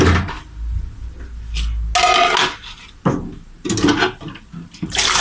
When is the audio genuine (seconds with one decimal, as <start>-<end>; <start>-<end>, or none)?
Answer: 0.0-5.2